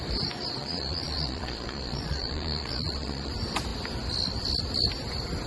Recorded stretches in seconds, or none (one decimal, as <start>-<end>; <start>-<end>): 0.0-0.6; 3.3-5.5